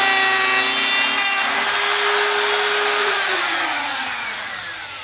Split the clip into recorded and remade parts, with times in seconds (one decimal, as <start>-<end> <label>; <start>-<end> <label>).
0.0-3.0 recorded; 3.0-4.6 remade; 4.6-5.0 recorded